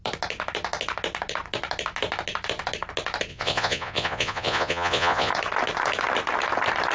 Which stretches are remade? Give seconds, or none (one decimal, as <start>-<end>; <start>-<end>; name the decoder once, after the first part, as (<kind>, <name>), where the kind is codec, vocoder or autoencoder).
3.3-5.3 (vocoder, Vocos)